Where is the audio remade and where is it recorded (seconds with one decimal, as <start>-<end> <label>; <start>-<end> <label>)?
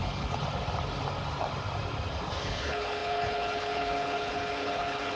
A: 0.0-0.4 remade; 0.4-2.4 recorded; 2.4-5.2 remade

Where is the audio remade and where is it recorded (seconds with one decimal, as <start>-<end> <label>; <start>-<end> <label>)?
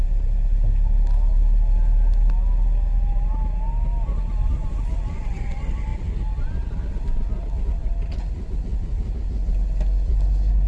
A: 0.0-10.7 recorded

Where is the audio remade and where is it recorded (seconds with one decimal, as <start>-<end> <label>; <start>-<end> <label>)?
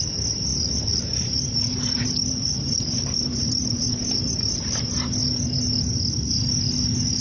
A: 0.0-0.5 recorded; 0.5-4.8 remade; 4.8-7.2 recorded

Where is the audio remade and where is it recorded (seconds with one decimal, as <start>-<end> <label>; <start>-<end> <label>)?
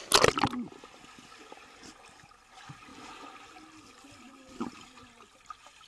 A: 0.0-5.9 recorded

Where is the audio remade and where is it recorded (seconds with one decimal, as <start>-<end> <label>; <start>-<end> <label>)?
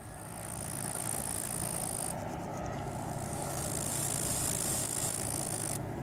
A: 0.0-0.4 recorded; 0.4-1.5 remade; 1.5-2.5 recorded; 2.5-3.6 remade; 3.6-4.8 recorded; 4.8-6.0 remade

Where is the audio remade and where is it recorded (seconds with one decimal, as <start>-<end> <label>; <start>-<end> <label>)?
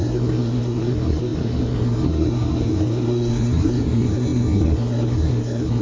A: 0.0-5.8 remade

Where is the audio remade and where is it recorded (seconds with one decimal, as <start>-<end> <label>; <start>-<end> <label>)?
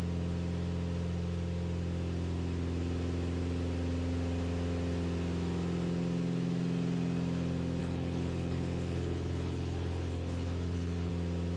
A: 0.0-7.8 recorded; 7.8-11.1 remade; 11.1-11.6 recorded